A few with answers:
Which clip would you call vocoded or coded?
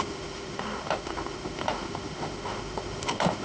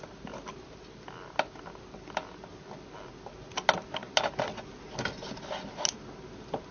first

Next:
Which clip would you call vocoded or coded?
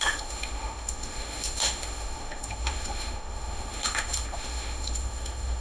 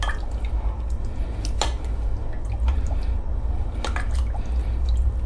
first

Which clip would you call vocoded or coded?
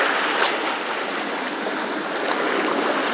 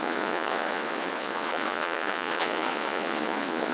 second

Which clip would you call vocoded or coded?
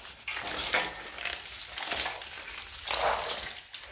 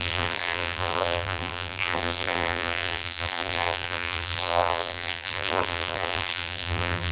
second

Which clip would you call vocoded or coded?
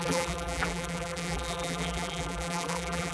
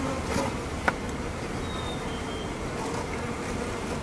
first